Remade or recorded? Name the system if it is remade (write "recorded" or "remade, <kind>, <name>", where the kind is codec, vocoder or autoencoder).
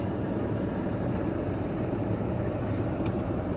remade, vocoder, BigVGAN v2